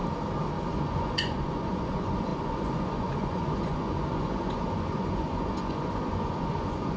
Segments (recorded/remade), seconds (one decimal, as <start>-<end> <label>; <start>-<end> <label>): 0.0-0.7 recorded; 0.7-7.0 remade